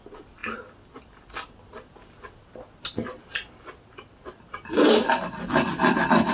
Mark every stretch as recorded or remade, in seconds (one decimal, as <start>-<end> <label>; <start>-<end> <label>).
0.0-6.3 recorded